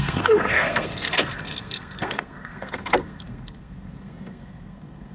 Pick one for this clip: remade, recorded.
remade